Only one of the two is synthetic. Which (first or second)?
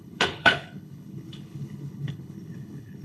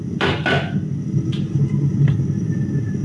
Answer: first